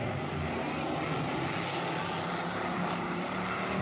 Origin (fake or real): real